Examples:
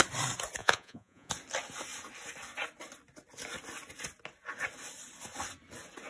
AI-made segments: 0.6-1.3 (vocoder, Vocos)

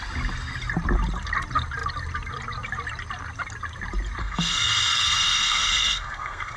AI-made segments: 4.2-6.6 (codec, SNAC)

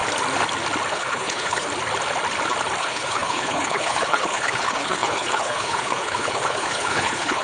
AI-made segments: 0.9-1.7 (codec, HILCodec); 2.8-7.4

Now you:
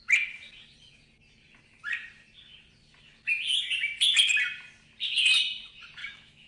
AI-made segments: 6.0-6.5 (autoencoder, DAC-VAE)

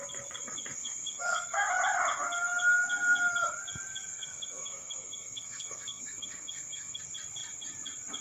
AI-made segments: 0.8-1.7 (codec, SNAC); 4.1-7.0

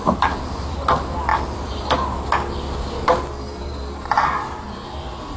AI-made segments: 0.0-1.3 (vocoder, BigVGAN v2); 4.5-5.4

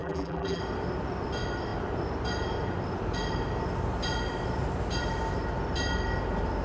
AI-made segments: 0.0-0.6 (vocoder, BigVGAN v2)